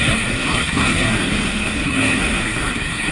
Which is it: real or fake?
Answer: fake